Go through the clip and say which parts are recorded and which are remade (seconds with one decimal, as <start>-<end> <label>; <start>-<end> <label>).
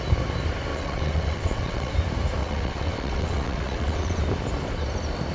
0.0-0.7 recorded; 0.7-1.9 remade; 1.9-2.4 recorded; 2.4-4.2 remade; 4.2-5.3 recorded